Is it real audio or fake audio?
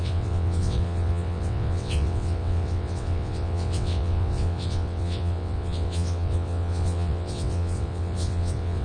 fake